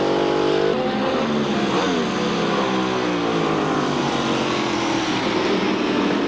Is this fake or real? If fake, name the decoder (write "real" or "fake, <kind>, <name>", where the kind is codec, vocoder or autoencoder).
real